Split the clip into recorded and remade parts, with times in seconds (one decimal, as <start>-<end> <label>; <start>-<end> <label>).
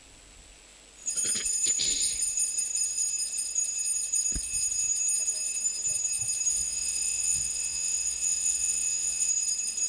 0.0-6.5 recorded; 6.5-9.3 remade; 9.3-9.9 recorded